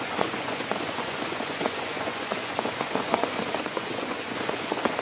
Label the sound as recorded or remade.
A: remade